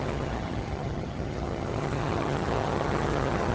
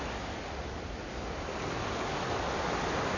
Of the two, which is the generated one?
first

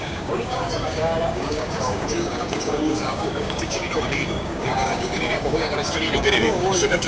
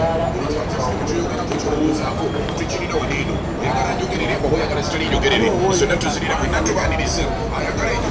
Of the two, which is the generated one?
first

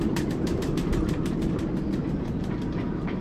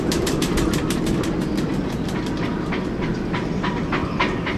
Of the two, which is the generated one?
first